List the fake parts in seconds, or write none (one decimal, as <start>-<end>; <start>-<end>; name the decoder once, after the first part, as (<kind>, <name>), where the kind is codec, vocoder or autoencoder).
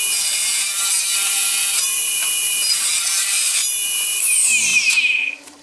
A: 0.0-3.6 (vocoder, BigVGAN v2); 4.1-5.6